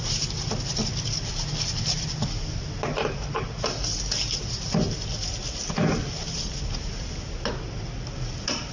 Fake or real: real